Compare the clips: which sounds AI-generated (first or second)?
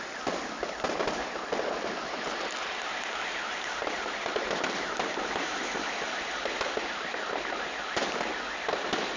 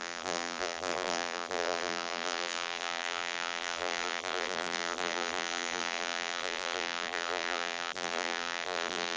second